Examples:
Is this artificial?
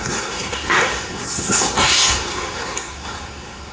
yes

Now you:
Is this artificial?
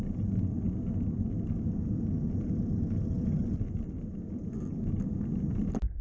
no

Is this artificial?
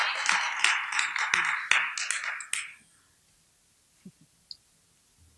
no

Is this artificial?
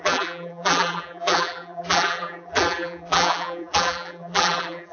yes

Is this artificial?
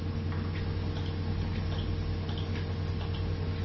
no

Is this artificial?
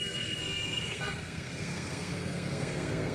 yes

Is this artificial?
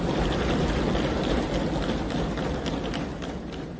no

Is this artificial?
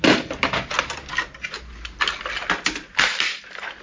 no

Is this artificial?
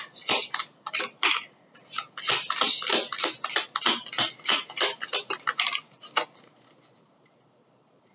no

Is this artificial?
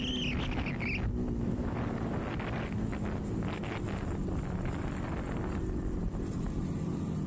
no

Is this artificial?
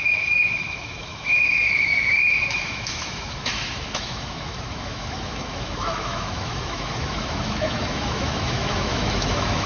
yes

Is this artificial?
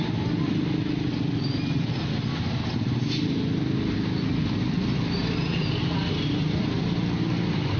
no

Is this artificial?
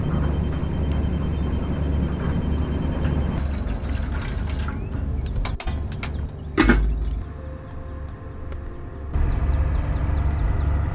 no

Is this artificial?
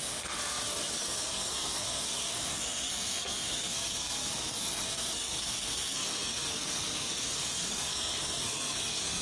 yes